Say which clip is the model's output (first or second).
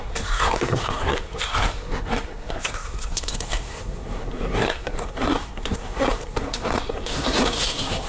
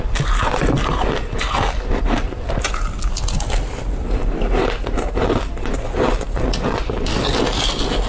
first